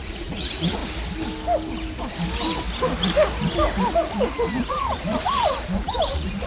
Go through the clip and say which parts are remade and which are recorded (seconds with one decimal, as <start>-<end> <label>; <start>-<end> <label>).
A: 0.0-0.8 remade; 0.8-4.7 recorded; 4.7-6.5 remade